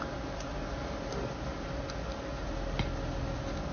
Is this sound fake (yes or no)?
no